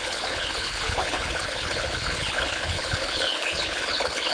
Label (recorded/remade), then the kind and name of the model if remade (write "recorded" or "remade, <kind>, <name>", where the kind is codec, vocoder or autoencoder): remade, codec, HILCodec